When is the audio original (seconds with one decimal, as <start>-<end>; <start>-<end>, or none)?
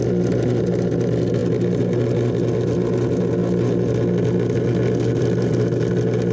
0.0-6.3